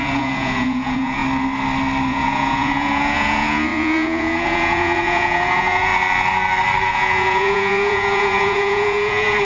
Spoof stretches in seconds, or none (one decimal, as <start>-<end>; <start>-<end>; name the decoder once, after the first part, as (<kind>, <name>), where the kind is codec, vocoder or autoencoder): 0.0-1.2 (vocoder, Vocos); 2.1-5.9; 6.9-9.4

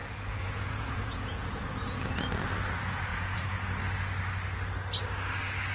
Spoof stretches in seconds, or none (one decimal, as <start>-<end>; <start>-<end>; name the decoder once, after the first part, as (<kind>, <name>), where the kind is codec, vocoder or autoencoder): 0.0-2.0 (vocoder, Vocos); 3.1-3.8

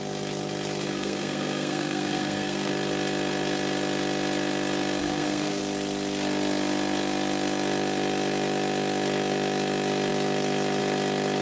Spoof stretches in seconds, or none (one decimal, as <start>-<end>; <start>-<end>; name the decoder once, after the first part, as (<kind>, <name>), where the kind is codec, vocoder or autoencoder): 0.9-2.7 (codec, SNAC); 5.0-5.6

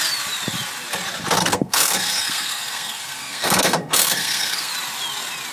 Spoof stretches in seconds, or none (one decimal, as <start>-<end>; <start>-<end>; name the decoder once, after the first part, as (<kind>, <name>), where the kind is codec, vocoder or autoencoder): 1.4-4.7 (codec, SNAC)